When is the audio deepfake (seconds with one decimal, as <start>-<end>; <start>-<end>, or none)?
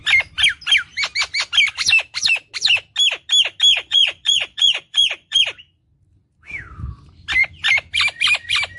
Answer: 3.7-5.4